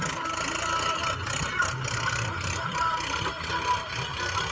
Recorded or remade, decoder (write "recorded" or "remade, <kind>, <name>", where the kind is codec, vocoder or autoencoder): recorded